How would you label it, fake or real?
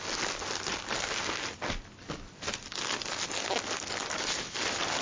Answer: real